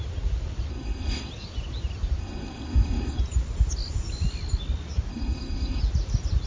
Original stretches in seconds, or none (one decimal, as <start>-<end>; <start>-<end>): 0.0-0.7; 1.3-2.2; 3.2-5.1; 5.8-6.5